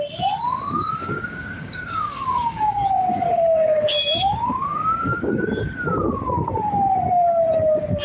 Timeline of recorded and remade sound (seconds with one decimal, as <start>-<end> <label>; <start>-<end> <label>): 0.0-0.9 recorded; 0.9-5.4 remade; 5.4-8.0 recorded